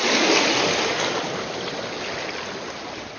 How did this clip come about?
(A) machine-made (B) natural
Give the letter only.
B